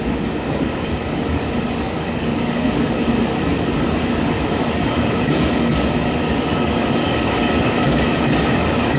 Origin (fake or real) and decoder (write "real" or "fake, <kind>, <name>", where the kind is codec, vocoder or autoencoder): fake, codec, DAC